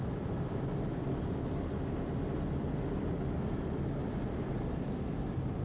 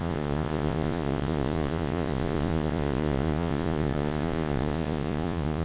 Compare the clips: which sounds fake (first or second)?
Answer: second